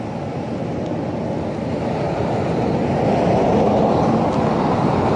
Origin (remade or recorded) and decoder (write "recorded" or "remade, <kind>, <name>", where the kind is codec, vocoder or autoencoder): recorded